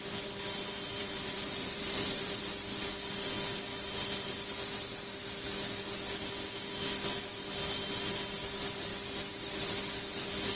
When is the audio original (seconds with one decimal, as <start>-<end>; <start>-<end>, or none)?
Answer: 0.0-1.0; 2.4-10.6